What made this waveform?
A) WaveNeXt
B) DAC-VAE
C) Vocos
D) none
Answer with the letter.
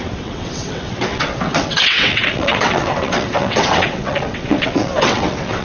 A